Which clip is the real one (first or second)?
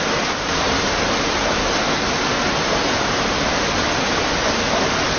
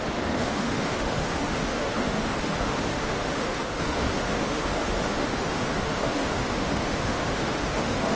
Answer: first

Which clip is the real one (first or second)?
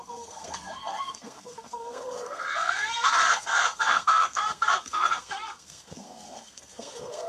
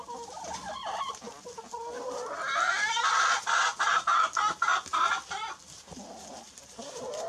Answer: second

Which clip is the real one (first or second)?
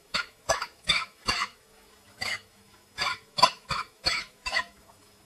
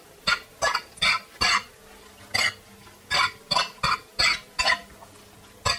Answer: second